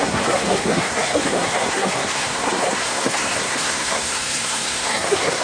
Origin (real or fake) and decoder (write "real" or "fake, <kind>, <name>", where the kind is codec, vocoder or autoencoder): fake, codec, SNAC